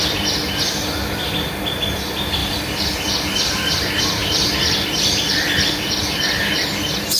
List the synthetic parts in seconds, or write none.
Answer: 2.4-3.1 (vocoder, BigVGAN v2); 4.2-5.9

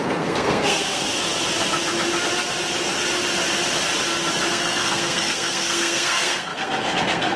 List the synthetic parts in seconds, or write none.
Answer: 0.0-1.1 (codec, SNAC); 4.5-7.4

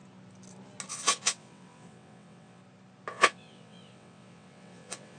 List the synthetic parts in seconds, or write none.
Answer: 0.9-2.6 (vocoder, WaveNeXt); 3.1-5.2

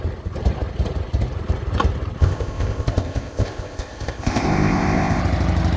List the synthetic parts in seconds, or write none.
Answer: 2.2-5.2 (codec, ZipCodec)

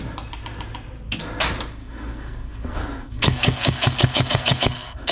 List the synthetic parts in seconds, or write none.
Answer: 1.8-5.1 (codec, SNAC)

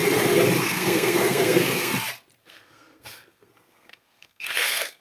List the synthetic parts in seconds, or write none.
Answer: 0.6-1.9 (codec, SNAC); 2.4-5.0

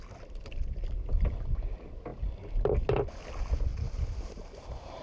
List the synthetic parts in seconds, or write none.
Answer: 3.7-5.0 (vocoder, BigVGAN v2)